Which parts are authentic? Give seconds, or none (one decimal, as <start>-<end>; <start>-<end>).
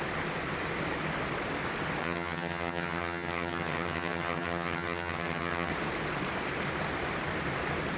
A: 0.0-2.0; 5.7-8.0